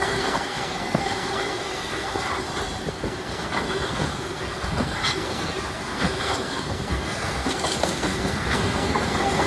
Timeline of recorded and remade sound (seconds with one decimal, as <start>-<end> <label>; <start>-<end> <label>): 0.0-2.3 remade; 2.3-2.9 recorded; 2.9-9.5 remade